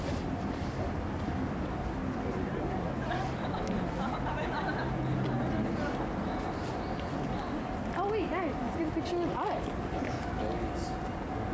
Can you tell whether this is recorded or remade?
recorded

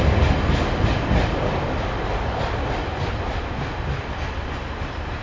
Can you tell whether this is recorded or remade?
recorded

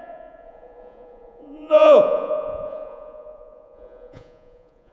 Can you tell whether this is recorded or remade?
remade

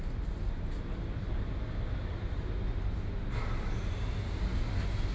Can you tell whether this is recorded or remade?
recorded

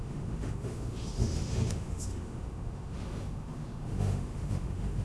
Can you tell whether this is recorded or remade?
remade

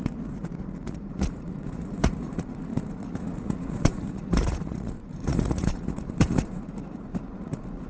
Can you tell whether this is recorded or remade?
remade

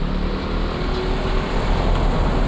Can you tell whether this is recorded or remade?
recorded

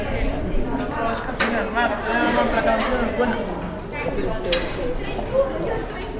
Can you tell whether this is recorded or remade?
recorded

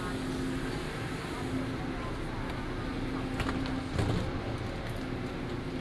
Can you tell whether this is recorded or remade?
recorded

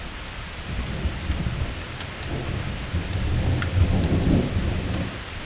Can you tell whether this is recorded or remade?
recorded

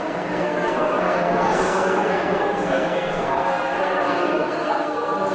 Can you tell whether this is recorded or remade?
remade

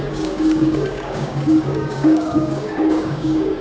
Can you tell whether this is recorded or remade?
remade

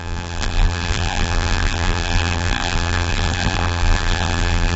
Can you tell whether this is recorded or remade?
remade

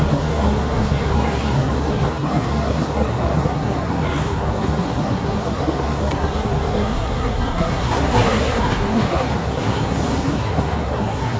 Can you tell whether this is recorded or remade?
remade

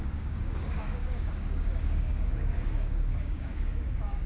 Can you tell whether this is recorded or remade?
remade